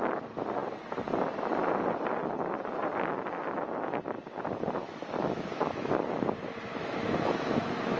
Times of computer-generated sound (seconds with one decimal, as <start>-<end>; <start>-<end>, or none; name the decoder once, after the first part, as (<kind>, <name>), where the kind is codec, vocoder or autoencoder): 4.8-5.9 (autoencoder, DAC-VAE); 6.7-8.0